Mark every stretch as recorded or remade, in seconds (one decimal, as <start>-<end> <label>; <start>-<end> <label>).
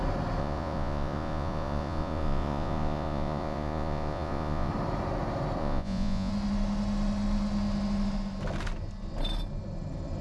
0.0-0.4 recorded; 0.4-4.7 remade; 4.7-5.6 recorded; 5.6-6.3 remade; 6.3-10.2 recorded